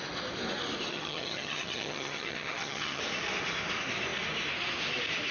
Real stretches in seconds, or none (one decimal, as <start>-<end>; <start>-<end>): 0.0-0.9; 3.0-5.3